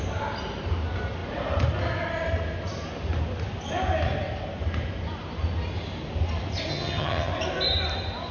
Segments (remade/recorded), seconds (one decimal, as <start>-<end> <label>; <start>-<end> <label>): 0.0-6.7 recorded; 6.7-7.3 remade; 7.3-8.3 recorded